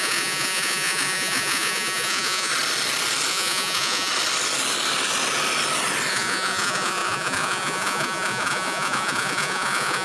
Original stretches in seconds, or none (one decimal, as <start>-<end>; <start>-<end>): 2.5-3.3; 4.1-6.1